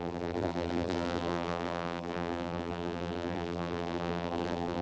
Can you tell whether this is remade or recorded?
remade